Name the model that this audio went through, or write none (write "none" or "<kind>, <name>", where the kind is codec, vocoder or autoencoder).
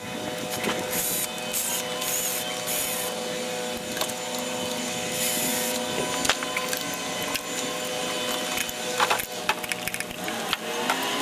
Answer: none